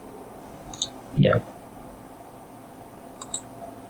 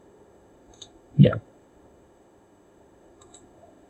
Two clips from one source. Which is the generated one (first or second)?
second